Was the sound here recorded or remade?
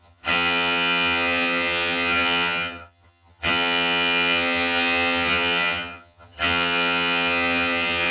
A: remade